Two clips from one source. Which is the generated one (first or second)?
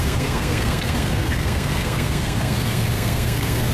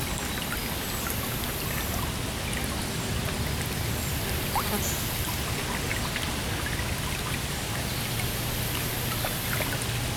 first